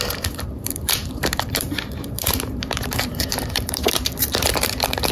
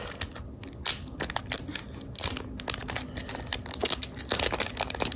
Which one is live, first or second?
second